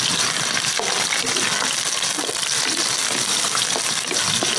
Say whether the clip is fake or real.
real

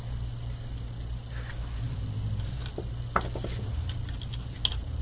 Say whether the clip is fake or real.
real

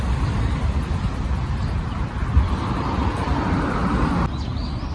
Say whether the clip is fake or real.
real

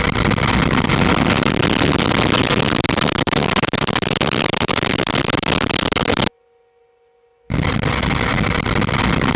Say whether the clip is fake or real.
real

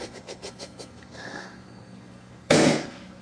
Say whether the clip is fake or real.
fake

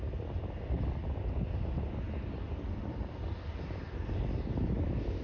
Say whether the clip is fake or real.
real